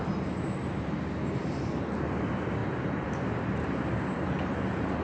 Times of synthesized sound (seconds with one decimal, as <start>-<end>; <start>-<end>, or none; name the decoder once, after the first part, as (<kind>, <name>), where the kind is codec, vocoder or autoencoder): 2.6-5.0 (vocoder, BigVGAN v2)